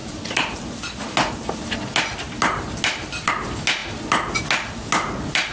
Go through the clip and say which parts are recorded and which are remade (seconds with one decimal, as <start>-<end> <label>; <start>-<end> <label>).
0.0-5.5 recorded